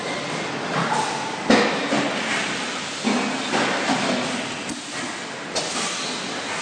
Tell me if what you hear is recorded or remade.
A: recorded